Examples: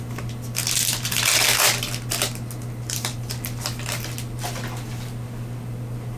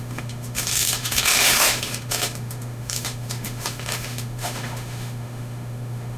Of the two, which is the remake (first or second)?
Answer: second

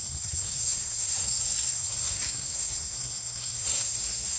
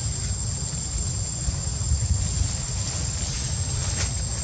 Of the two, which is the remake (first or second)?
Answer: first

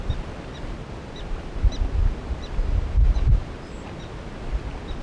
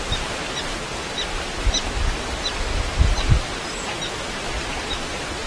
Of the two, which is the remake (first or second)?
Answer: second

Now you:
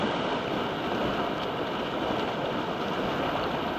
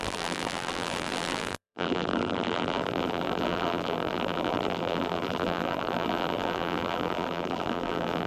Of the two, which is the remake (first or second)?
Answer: second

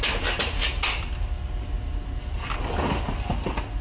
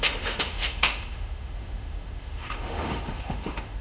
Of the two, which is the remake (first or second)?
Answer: second